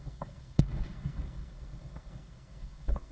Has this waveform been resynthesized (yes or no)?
yes